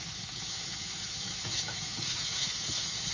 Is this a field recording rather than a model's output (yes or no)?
no